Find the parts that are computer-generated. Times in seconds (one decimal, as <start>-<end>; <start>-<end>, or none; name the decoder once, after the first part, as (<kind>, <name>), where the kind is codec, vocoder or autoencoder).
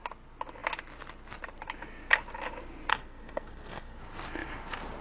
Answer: 2.9-4.0 (codec, SNAC)